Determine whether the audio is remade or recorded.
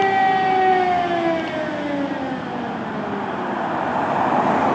recorded